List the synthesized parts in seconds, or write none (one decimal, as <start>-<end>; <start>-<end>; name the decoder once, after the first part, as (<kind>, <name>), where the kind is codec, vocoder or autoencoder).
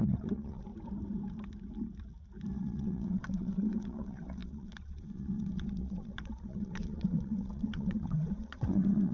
0.0-0.7 (vocoder, WaveNeXt); 2.5-9.1